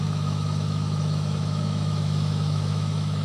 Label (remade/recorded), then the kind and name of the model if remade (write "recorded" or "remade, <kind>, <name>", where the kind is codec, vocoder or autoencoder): remade, autoencoder, DAC-VAE